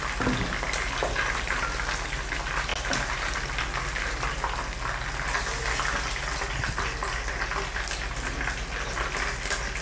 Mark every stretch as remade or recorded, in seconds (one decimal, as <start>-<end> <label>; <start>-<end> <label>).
0.0-9.8 recorded